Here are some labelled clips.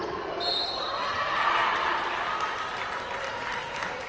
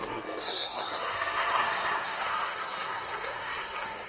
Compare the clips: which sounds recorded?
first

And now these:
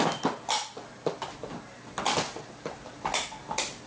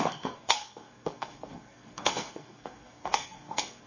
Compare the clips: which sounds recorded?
first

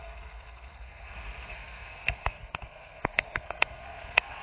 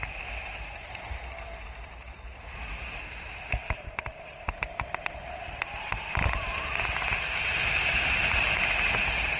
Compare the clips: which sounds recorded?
second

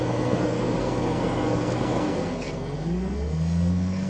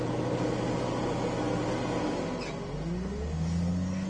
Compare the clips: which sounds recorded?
second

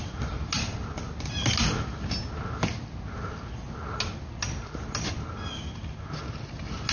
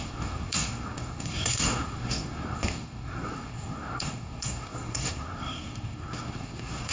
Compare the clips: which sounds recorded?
first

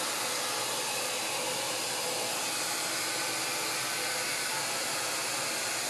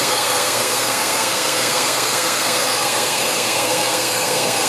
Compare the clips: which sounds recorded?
first